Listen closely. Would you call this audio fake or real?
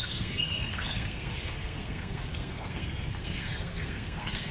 fake